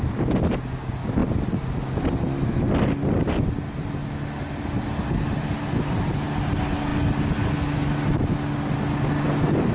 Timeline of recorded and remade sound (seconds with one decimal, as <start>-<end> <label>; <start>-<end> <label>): 0.0-9.7 recorded